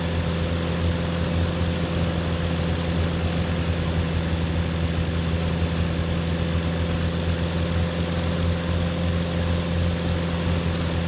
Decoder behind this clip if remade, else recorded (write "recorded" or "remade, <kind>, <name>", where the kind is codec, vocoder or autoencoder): recorded